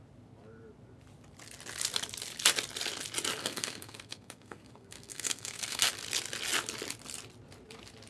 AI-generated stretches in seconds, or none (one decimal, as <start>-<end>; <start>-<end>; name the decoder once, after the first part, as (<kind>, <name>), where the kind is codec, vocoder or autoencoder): 3.4-5.9 (codec, SNAC)

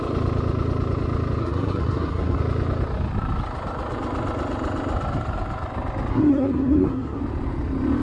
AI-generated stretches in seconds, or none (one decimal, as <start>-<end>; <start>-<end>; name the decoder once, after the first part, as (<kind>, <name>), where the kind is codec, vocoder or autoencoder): 1.4-2.4 (codec, SNAC); 6.1-7.2

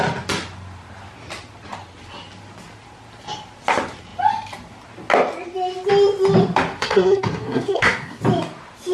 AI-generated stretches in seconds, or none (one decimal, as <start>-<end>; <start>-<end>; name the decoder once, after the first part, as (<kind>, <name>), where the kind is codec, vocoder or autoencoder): 6.8-8.2 (codec, SNAC)